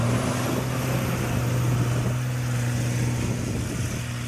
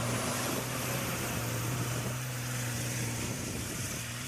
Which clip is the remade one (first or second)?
second